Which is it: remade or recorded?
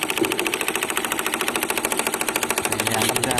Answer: recorded